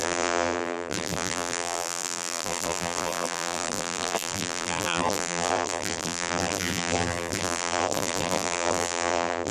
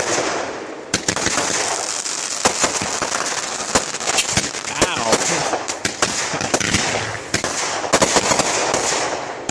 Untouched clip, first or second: second